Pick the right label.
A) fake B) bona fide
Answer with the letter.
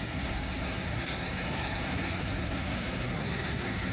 A